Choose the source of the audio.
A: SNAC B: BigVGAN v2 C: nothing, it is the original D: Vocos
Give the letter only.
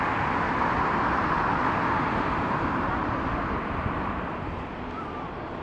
C